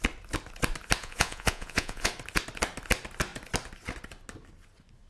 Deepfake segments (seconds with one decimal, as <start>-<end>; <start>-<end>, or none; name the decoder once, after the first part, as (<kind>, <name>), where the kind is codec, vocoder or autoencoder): 1.0-2.1 (vocoder, Vocos)